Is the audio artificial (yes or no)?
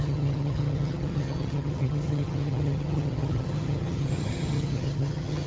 yes